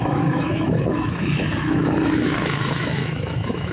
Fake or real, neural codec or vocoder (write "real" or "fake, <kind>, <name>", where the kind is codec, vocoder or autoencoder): fake, autoencoder, DAC-VAE